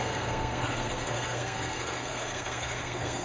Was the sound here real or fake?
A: fake